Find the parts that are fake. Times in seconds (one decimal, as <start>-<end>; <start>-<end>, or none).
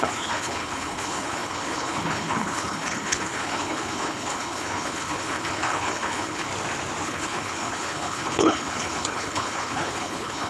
0.0-6.5; 7.0-10.5